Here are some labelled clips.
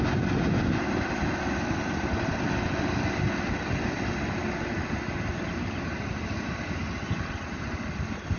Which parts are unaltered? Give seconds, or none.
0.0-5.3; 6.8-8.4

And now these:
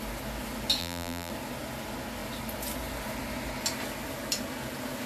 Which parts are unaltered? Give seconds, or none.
0.0-0.8; 1.3-5.1

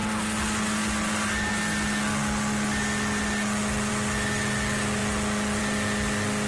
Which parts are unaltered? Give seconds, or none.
0.0-6.5

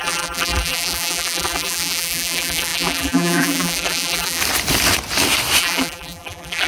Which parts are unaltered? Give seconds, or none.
4.4-5.6

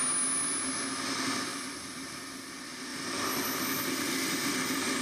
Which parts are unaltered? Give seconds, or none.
0.0-1.5; 2.5-2.9; 4.3-5.0